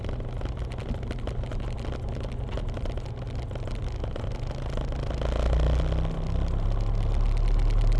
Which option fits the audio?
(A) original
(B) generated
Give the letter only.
A